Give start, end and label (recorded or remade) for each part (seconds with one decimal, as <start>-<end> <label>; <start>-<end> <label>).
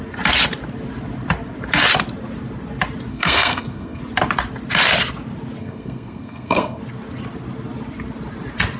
0.0-3.1 recorded; 3.1-4.0 remade; 4.0-5.6 recorded; 5.6-6.8 remade; 6.8-8.8 recorded